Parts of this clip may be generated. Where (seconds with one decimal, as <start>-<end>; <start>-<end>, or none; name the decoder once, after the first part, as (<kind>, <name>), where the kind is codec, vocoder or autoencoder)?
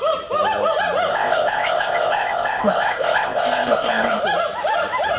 1.1-4.2 (codec, ZipCodec)